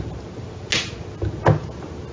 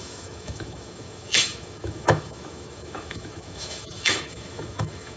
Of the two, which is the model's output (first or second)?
second